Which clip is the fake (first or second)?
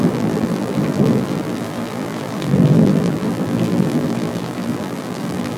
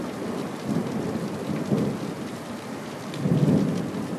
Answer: first